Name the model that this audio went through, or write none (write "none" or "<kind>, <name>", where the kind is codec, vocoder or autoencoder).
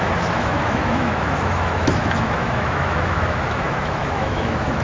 autoencoder, DAC-VAE